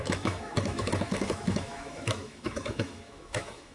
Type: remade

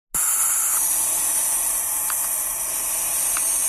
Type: recorded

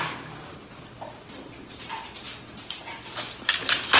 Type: recorded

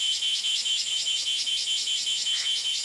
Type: remade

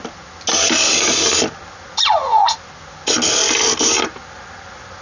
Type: recorded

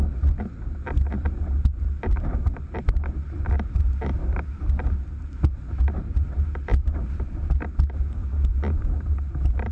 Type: recorded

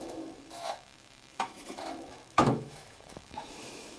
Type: remade